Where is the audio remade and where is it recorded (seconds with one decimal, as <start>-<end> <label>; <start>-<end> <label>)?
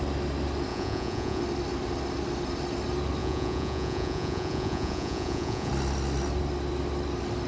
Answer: 0.0-0.7 recorded; 0.7-1.4 remade; 1.4-3.2 recorded; 3.2-5.7 remade; 5.7-7.5 recorded